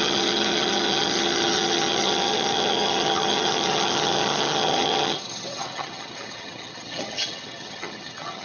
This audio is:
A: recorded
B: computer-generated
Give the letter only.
B